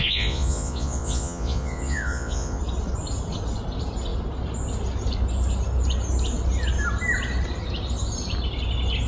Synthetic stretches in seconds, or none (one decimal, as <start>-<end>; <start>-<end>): 0.0-2.6